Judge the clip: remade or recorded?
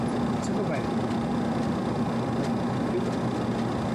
recorded